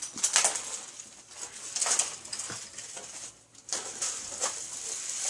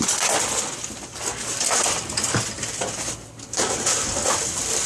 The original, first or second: first